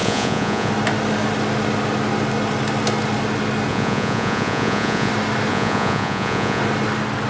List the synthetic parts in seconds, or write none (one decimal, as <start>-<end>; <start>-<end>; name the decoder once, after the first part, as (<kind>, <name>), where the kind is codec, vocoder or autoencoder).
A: 0.0-0.7 (vocoder, Vocos); 3.7-5.1; 5.5-6.6

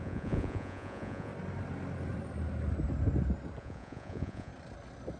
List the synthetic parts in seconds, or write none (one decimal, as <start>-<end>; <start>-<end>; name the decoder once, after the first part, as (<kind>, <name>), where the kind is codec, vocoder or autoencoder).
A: 0.0-1.3 (vocoder, Vocos); 3.6-4.5

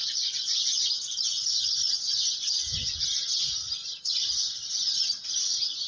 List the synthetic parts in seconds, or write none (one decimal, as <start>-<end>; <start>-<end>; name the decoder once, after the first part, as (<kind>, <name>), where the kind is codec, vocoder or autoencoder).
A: none

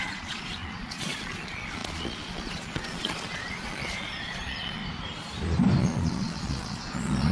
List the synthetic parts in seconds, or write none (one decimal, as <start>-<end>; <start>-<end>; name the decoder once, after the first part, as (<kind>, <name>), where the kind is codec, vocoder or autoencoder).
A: 0.0-4.8 (vocoder, Vocos); 5.8-7.3